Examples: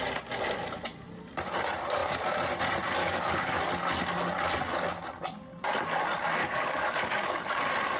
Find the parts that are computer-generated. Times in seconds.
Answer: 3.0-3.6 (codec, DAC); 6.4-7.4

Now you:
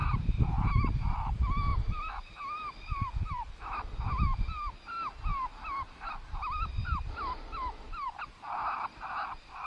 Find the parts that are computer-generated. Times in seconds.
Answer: 0.0-0.9 (vocoder, BigVGAN v2); 1.7-4.4; 5.3-9.7

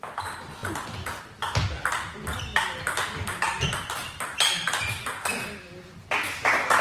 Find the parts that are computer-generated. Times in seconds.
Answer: none

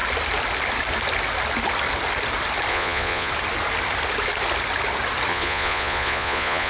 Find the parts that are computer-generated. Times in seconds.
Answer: 2.7-3.3 (vocoder, Vocos); 5.3-6.7

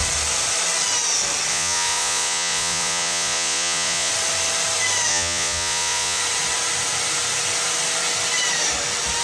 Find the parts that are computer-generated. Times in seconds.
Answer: 1.5-4.1 (vocoder, Vocos); 5.1-6.2